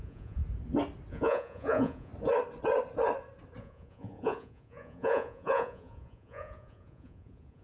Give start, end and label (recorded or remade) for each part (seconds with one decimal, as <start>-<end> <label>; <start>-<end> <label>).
0.0-0.4 remade; 0.4-1.1 recorded; 1.1-2.1 remade; 2.1-3.6 recorded; 3.6-7.6 remade